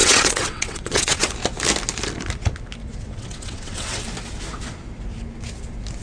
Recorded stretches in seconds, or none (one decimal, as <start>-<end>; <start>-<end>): 1.3-2.8; 4.0-6.0